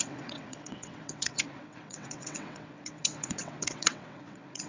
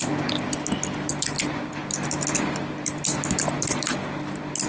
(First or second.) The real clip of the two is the second